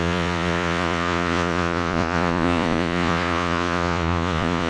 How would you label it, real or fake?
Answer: fake